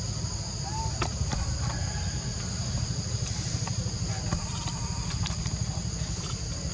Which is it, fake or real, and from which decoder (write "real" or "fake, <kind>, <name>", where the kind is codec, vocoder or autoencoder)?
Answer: real